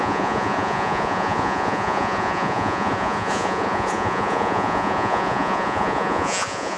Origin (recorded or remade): remade